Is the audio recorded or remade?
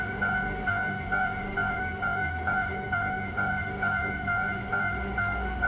remade